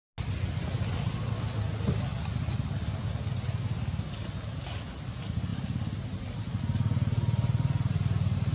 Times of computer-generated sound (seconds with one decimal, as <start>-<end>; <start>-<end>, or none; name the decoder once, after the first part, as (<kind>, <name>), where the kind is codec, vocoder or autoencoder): none